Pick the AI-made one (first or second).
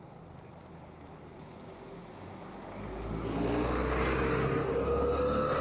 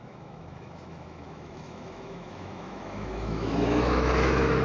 second